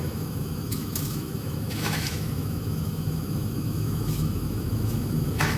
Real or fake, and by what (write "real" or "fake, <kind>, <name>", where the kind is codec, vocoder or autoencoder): fake, autoencoder, DAC-VAE